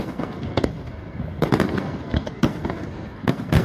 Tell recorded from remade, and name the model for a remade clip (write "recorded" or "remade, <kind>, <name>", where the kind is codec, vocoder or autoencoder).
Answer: remade, codec, SNAC